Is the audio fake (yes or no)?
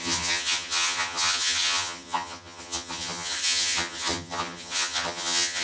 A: yes